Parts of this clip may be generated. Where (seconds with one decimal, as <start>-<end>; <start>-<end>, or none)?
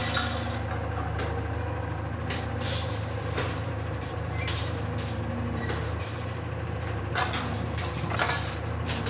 2.2-9.1